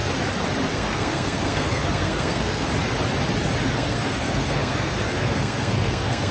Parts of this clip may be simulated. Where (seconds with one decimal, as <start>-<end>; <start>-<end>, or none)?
0.7-2.7; 3.6-6.3